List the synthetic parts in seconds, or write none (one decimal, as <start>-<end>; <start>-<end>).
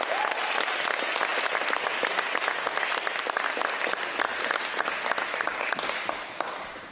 none